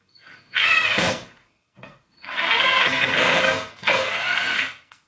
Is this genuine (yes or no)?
no